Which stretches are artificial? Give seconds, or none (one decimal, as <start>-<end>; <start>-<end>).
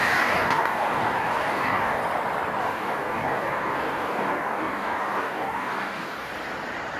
0.0-2.0; 2.6-6.3